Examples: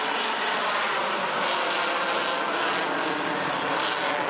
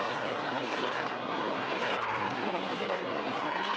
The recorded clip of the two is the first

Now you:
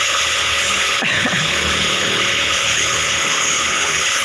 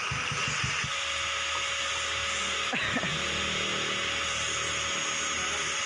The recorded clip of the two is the second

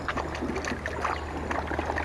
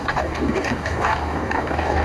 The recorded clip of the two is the first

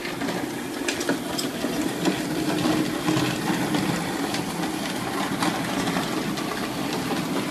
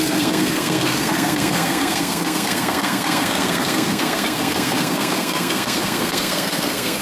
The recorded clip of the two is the first